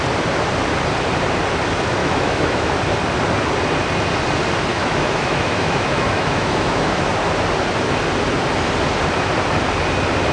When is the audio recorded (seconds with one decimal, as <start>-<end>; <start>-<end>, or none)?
0.0-2.0; 2.7-4.7; 7.1-10.3